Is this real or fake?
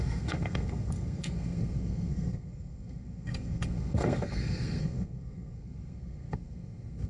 fake